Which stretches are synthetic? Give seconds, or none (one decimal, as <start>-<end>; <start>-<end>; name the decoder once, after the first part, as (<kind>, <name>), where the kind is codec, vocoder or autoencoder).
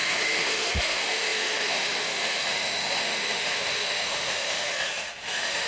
0.0-5.7 (autoencoder, DAC-VAE)